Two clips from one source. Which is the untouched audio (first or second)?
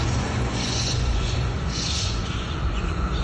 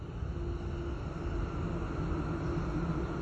second